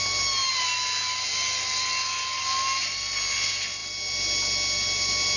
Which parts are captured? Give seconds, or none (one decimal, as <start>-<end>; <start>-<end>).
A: 0.0-5.4